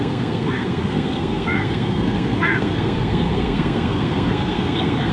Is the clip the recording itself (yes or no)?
no